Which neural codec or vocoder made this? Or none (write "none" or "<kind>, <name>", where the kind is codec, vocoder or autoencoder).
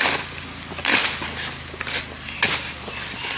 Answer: none